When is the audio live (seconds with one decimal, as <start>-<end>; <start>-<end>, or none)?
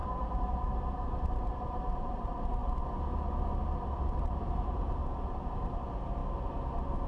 0.0-0.5; 2.6-3.6; 5.0-5.5; 6.2-7.1